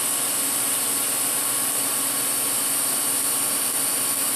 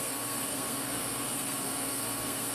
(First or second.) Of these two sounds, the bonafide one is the first